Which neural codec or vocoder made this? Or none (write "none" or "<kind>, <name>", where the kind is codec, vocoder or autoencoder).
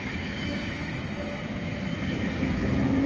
autoencoder, DAC-VAE